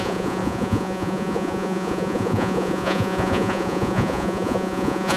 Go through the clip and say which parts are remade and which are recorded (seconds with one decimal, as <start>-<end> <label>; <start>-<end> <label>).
0.0-5.2 remade